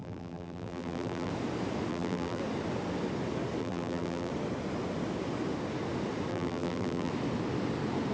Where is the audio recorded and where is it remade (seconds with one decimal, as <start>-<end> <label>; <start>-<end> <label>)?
0.0-1.3 remade; 1.3-1.9 recorded; 1.9-2.4 remade; 2.4-3.6 recorded; 3.6-4.3 remade; 4.3-6.3 recorded; 6.3-7.1 remade; 7.1-8.1 recorded